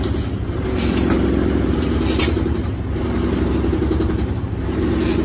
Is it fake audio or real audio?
fake